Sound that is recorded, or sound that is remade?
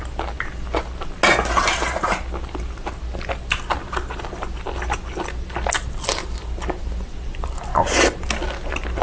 recorded